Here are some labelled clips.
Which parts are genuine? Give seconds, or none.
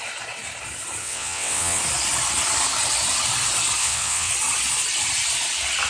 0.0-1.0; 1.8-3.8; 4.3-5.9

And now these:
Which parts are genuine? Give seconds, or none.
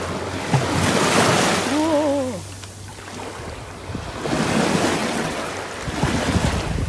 0.0-5.0; 5.5-6.9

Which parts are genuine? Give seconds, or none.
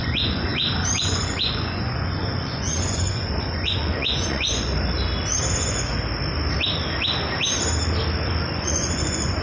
4.7-5.5; 5.9-8.5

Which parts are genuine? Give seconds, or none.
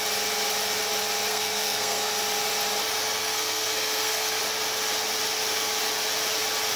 0.0-1.3; 2.1-3.2; 4.4-6.8